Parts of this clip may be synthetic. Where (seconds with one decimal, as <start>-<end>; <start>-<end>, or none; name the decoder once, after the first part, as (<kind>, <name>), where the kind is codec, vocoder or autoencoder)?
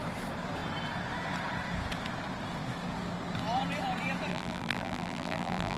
4.3-5.8 (vocoder, BigVGAN v2)